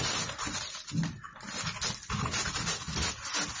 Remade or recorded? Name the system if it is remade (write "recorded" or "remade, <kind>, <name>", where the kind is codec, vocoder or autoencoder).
recorded